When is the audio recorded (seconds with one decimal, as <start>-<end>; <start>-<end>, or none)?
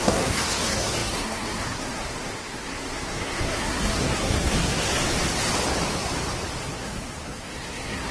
5.0-6.6